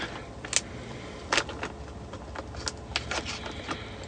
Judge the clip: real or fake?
real